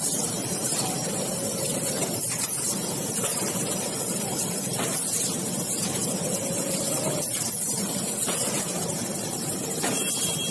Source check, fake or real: fake